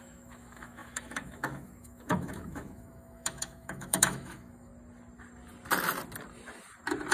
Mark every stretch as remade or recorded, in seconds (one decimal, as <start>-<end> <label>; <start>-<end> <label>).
0.0-4.7 remade; 4.7-7.1 recorded